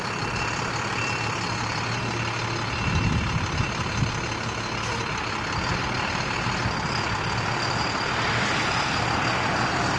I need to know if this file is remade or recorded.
recorded